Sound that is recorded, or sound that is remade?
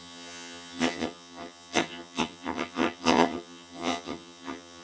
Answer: remade